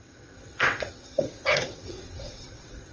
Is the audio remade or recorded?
remade